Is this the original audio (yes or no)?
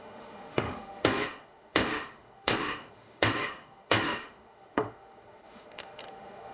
no